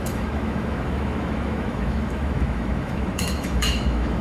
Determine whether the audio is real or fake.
fake